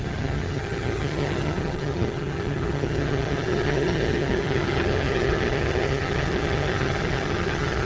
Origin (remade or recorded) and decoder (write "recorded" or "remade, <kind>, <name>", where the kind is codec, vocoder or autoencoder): remade, vocoder, HiFi-GAN